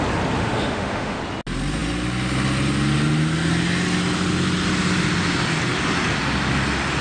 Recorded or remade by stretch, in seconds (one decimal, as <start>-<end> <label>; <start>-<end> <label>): 0.0-0.4 recorded; 0.4-1.2 remade; 1.2-7.0 recorded